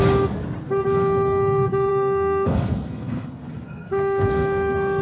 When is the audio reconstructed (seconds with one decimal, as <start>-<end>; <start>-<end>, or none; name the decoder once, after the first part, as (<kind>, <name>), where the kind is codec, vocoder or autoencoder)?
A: 1.9-3.9 (codec, SNAC)